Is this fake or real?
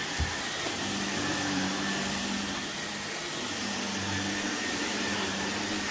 real